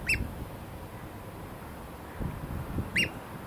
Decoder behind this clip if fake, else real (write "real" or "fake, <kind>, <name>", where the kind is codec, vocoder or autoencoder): real